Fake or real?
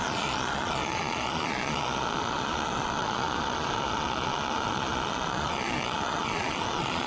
fake